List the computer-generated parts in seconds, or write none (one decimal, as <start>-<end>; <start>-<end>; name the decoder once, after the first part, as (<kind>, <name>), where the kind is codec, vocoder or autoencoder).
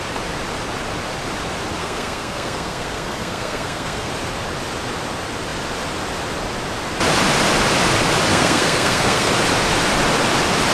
1.8-4.1 (codec, SNAC); 8.3-9.3